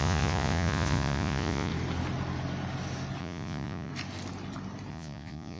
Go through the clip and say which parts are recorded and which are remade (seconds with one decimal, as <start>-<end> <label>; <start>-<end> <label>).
0.0-1.7 remade; 1.7-3.2 recorded; 3.2-3.9 remade; 3.9-4.9 recorded; 4.9-5.6 remade